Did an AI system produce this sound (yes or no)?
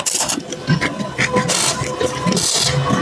no